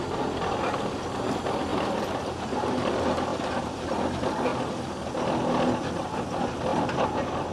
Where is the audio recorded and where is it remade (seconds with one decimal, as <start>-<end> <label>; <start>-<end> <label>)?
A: 0.0-1.7 recorded; 1.7-2.9 remade; 2.9-3.3 recorded; 3.3-3.9 remade; 3.9-6.7 recorded; 6.7-7.5 remade